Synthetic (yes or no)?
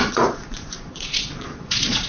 yes